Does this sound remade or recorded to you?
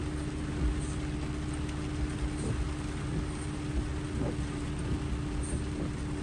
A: recorded